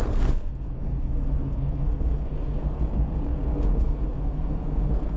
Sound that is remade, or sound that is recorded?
remade